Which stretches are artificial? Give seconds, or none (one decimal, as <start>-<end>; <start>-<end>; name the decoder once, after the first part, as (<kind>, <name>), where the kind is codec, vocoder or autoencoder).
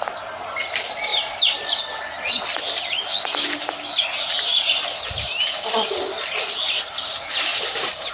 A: 1.1-1.8 (vocoder, BigVGAN v2); 7.5-8.1